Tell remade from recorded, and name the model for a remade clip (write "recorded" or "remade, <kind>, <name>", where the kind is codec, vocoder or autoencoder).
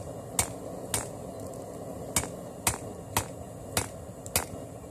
recorded